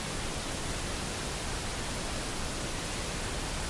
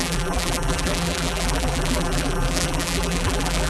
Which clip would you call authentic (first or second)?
first